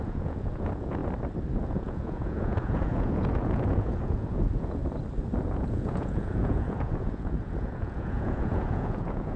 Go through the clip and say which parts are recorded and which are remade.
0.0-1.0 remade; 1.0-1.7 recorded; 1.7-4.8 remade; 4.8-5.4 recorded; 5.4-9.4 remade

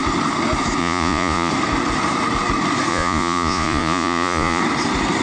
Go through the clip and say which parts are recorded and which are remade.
0.0-0.8 recorded; 0.8-1.5 remade; 1.5-2.9 recorded; 2.9-4.6 remade; 4.6-5.2 recorded

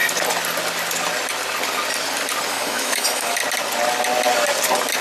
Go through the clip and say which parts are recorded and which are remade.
0.0-2.5 recorded; 2.5-3.4 remade; 3.4-5.0 recorded

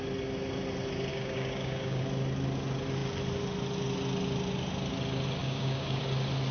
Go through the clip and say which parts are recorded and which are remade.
0.0-1.1 recorded; 1.1-2.0 remade; 2.0-5.4 recorded; 5.4-6.0 remade; 6.0-6.5 recorded